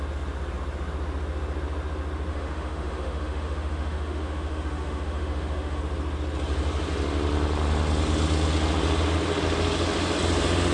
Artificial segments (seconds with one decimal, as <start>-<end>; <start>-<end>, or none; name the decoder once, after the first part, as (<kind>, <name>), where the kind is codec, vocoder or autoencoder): 2.3-5.8 (autoencoder, DAC-VAE)